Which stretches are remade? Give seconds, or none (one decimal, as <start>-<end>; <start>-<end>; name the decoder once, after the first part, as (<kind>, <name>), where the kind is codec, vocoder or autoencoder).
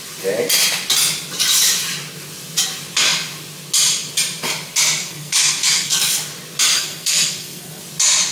5.0-6.1 (codec, SNAC); 6.7-7.8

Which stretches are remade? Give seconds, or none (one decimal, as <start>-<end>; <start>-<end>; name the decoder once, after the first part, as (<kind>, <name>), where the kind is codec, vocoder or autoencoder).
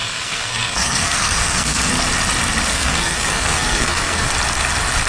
0.0-1.9 (codec, SNAC); 2.7-4.3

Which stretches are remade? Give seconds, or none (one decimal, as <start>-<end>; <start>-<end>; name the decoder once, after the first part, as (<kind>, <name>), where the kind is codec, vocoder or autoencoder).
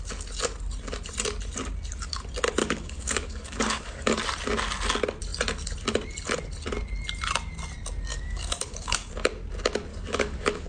2.6-4.2 (codec, DAC); 8.1-9.1; 9.9-10.7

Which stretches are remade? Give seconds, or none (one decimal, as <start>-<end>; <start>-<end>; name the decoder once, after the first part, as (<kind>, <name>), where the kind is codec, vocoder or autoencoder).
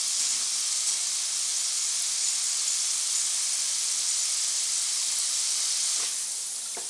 none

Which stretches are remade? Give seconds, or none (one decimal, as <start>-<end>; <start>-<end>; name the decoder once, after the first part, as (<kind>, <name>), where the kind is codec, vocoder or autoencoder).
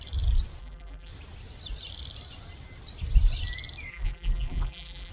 0.6-1.1 (vocoder, BigVGAN v2); 3.9-5.1